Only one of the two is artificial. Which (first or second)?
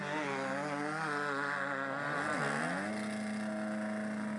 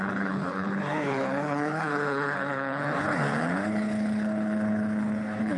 second